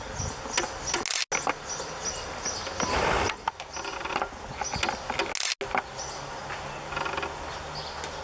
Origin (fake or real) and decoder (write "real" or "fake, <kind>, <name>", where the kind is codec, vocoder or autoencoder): real